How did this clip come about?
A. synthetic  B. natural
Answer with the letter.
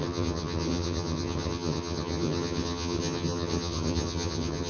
A